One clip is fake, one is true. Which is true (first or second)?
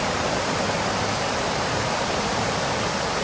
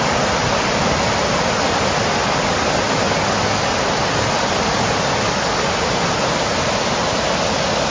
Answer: second